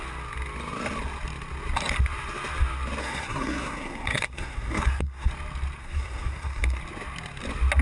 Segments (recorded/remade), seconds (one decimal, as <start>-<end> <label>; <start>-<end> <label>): 0.0-3.0 recorded; 3.0-5.3 remade; 5.3-5.8 recorded; 5.8-6.8 remade; 6.8-7.8 recorded